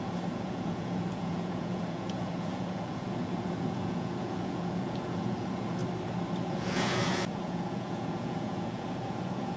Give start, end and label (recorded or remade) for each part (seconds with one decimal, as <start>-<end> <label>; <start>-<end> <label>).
0.0-5.8 remade; 5.8-6.4 recorded; 6.4-9.6 remade